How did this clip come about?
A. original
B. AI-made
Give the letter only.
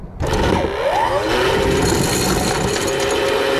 A